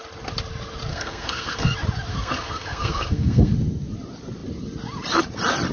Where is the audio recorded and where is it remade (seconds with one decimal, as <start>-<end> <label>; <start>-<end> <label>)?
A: 0.0-0.9 recorded; 0.9-1.7 remade; 1.7-2.1 recorded; 2.1-3.5 remade; 3.5-5.7 recorded

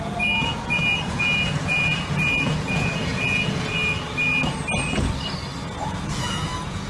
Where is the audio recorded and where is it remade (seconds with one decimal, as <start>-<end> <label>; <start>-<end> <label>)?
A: 0.0-3.7 remade; 3.7-5.8 recorded; 5.8-6.9 remade

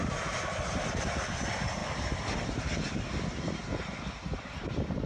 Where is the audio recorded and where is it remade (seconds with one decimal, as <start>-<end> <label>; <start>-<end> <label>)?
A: 0.0-5.1 recorded

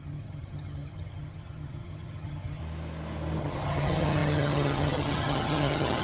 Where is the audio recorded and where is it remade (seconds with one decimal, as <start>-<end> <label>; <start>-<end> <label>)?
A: 0.0-2.6 remade; 2.6-3.4 recorded; 3.4-6.0 remade